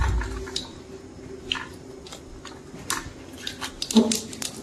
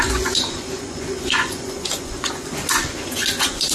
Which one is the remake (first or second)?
second